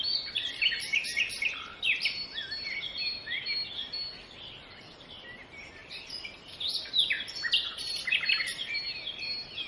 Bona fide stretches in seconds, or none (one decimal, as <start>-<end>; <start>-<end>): 0.0-9.7